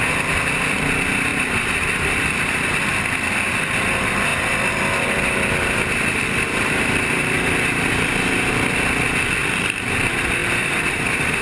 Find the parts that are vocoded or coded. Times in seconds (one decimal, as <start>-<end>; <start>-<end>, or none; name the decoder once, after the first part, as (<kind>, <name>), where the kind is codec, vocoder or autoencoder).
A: 1.3-2.8 (vocoder, BigVGAN v2); 4.3-7.9; 10.4-11.4

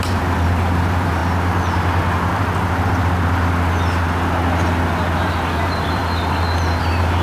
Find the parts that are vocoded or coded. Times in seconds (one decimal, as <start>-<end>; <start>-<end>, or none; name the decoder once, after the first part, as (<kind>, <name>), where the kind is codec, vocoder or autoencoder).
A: 0.0-1.2 (vocoder, BigVGAN v2); 5.2-6.0; 6.8-7.2